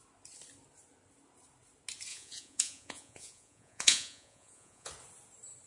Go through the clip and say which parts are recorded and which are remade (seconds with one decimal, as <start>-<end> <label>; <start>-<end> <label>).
0.0-2.1 recorded; 2.1-4.9 remade; 4.9-5.7 recorded